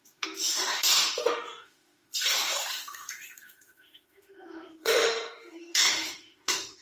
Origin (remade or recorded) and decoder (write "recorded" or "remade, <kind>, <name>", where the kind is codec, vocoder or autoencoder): remade, autoencoder, DAC-VAE